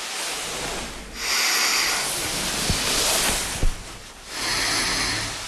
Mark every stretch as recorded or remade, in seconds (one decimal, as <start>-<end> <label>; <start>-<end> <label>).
0.0-5.5 recorded